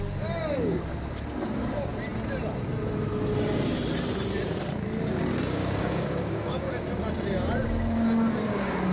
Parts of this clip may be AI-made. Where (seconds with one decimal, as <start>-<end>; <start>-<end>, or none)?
5.6-6.7